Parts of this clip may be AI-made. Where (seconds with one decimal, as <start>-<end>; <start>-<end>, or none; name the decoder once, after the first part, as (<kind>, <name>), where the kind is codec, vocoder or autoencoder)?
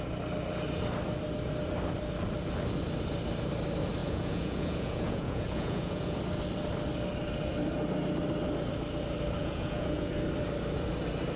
4.0-6.2 (vocoder, Vocos); 9.4-10.1